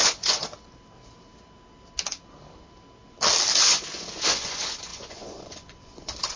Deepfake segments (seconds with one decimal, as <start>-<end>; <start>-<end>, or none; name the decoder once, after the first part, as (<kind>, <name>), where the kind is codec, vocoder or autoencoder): 0.0-0.5 (vocoder, Vocos); 3.5-6.4